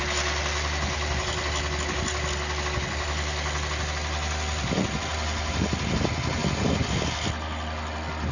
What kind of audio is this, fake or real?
real